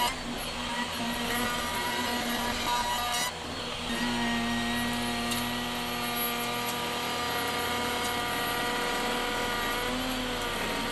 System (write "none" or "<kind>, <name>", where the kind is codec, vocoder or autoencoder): none